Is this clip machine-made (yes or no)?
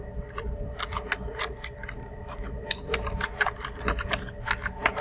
no